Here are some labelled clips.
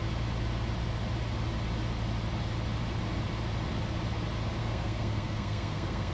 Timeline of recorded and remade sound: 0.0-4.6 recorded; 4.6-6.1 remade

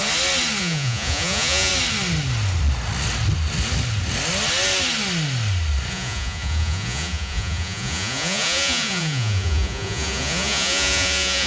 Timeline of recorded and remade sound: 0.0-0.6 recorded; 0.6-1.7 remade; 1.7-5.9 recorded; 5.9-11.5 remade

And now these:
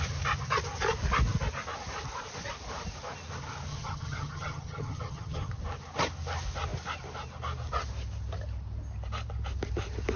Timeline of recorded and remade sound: 0.0-3.7 recorded; 3.7-5.5 remade; 5.5-10.2 recorded

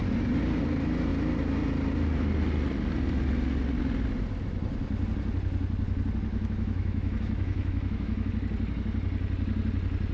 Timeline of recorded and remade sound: 0.0-6.3 recorded; 6.3-8.3 remade; 8.3-10.1 recorded

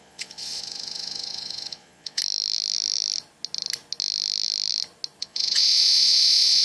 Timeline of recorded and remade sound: 0.0-2.2 remade; 2.2-5.2 recorded; 5.2-6.6 remade